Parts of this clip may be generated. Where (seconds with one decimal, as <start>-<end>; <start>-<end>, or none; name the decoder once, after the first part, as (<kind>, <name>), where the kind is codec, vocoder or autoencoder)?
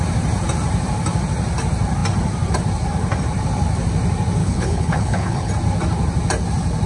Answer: 4.4-5.5 (codec, HILCodec)